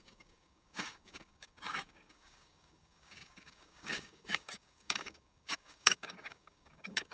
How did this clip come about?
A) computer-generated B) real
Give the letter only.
A